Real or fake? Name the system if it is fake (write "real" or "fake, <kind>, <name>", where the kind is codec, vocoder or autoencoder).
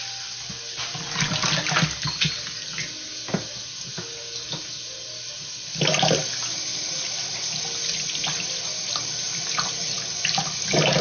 real